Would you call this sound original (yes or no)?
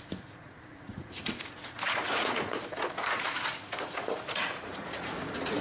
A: no